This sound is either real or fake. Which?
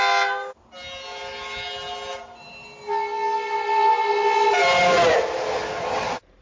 real